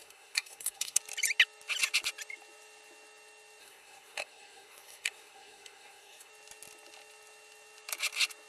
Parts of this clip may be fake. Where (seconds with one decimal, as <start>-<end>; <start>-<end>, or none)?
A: 0.0-1.0; 3.6-6.3